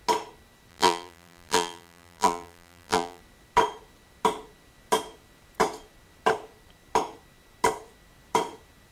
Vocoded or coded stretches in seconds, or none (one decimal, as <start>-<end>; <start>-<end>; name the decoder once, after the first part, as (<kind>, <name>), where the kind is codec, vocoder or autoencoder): 0.7-3.2 (vocoder, BigVGAN v2)